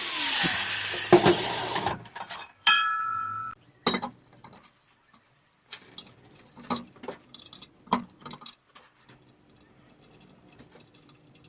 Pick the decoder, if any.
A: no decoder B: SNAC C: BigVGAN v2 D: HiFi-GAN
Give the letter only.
C